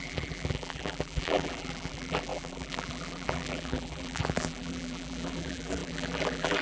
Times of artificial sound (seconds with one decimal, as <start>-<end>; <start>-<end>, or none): 0.0-6.6